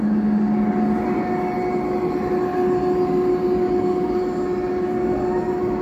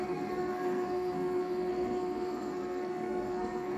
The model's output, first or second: second